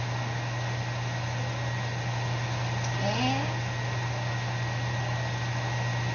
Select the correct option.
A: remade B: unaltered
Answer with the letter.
B